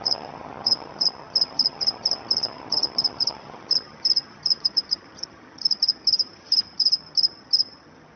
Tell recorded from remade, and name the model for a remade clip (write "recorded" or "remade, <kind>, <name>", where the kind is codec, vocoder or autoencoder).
remade, vocoder, HiFi-GAN